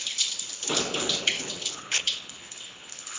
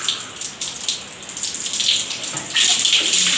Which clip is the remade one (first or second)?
first